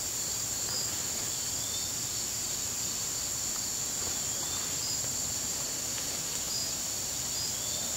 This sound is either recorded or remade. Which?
recorded